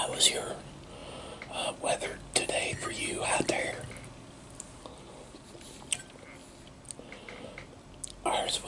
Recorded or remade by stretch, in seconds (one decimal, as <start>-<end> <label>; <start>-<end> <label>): 0.0-8.7 recorded